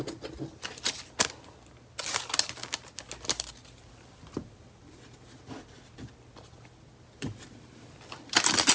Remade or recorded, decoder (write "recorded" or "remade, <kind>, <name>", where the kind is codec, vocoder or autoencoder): recorded